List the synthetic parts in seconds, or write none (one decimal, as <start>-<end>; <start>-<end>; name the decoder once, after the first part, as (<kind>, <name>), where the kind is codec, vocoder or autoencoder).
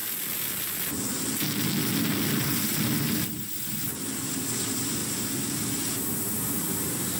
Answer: 4.3-5.0 (vocoder, BigVGAN v2); 5.8-7.2